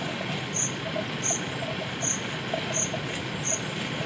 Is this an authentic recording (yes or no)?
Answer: yes